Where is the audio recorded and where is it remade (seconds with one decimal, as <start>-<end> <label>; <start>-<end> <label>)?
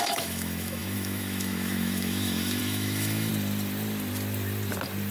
0.0-3.3 remade; 3.3-5.1 recorded